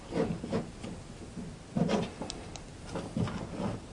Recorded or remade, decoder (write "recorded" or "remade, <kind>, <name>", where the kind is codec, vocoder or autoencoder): recorded